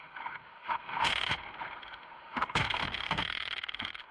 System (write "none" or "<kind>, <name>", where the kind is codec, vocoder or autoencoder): autoencoder, DAC-VAE